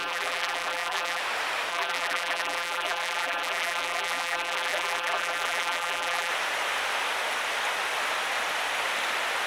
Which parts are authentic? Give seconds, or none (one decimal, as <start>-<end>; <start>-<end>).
1.2-1.7; 6.3-9.5